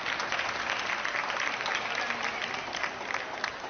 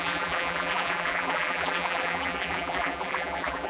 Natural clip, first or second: first